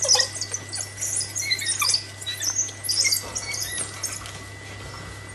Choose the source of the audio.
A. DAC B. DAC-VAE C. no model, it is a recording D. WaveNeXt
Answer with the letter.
C